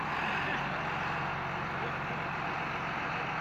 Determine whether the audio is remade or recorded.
recorded